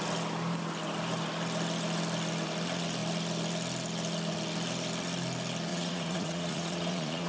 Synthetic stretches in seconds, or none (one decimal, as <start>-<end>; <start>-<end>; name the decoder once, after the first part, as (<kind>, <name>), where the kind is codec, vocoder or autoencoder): 5.7-7.3 (vocoder, Vocos)